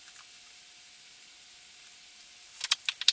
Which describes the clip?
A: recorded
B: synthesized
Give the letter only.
A